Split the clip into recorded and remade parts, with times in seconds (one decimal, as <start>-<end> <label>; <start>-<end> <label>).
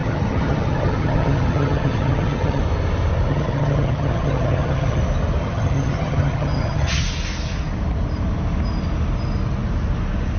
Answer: 0.0-2.6 remade; 2.6-3.3 recorded; 3.3-5.0 remade; 5.0-5.4 recorded; 5.4-7.0 remade; 7.0-10.4 recorded